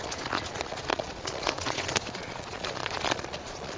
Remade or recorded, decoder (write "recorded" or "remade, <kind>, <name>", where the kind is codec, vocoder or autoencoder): remade, vocoder, Vocos